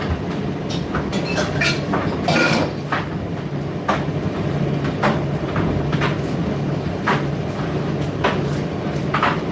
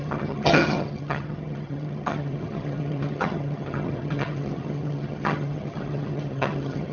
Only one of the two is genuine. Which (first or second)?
first